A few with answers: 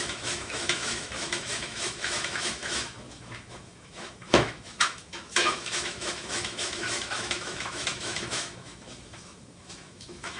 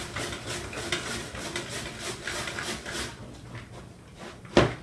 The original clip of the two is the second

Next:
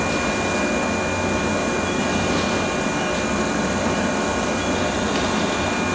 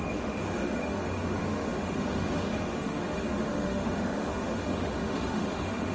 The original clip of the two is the first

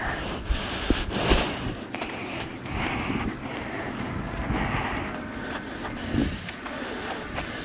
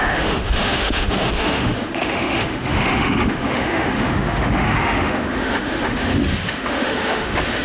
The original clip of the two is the first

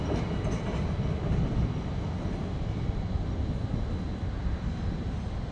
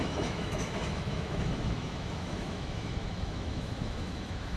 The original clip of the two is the first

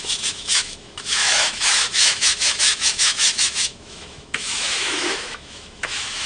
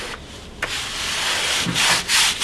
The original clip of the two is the second